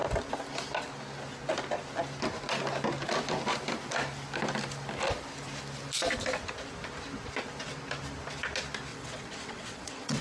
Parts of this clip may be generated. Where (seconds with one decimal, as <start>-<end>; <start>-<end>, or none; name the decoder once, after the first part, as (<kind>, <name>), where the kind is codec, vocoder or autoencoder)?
8.9-10.2 (vocoder, WaveNeXt)

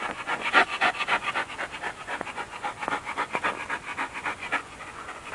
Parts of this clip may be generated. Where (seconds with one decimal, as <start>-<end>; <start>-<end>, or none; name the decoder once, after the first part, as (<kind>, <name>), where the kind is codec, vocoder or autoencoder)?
0.0-1.5 (vocoder, Vocos); 2.0-3.5; 3.9-5.3

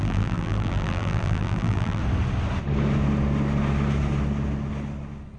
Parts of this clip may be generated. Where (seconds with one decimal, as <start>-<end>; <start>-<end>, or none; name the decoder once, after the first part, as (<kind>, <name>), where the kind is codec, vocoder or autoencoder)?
0.0-2.0 (vocoder, BigVGAN v2)